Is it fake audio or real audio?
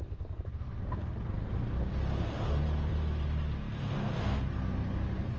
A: real